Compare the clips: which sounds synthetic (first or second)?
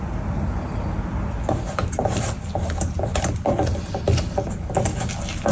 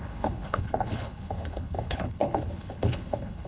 second